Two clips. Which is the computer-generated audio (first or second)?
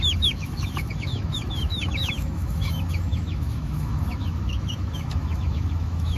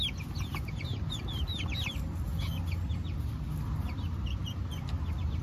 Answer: first